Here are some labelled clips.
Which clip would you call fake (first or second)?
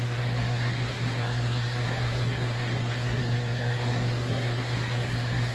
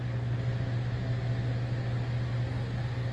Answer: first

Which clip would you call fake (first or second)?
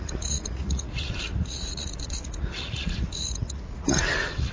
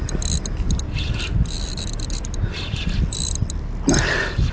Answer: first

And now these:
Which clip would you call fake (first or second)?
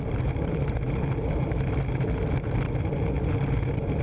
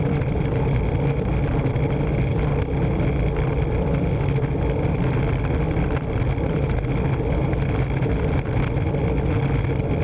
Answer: first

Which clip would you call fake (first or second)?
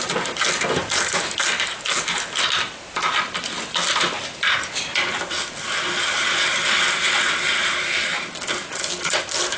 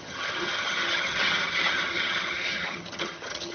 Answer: second